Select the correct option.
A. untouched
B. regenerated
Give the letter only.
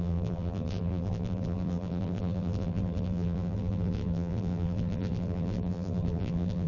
B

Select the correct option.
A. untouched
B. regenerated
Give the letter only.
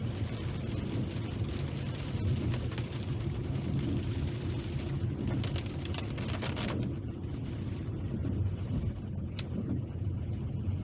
A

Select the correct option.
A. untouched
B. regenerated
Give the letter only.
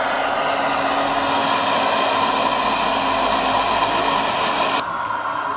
A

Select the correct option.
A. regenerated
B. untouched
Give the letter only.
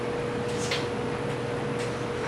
B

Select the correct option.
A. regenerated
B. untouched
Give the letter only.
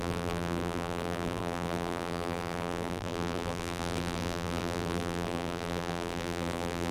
A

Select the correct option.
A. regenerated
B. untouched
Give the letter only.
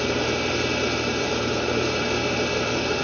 A